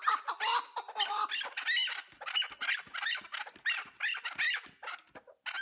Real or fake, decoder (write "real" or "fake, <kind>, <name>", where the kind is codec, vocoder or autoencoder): real